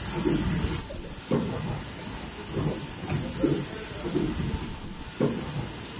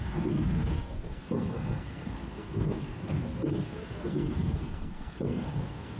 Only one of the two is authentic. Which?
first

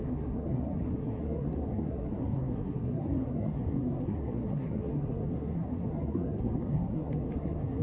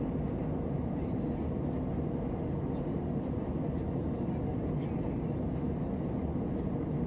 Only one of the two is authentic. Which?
second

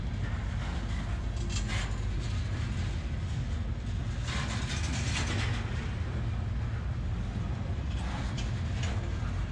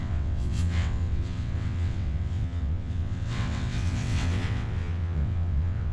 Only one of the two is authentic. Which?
first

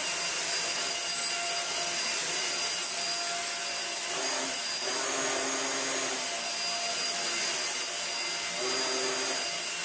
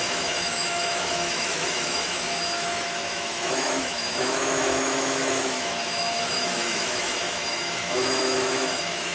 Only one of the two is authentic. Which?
first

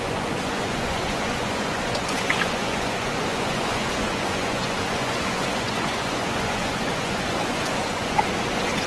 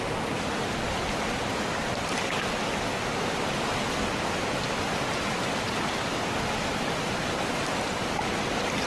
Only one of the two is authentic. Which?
second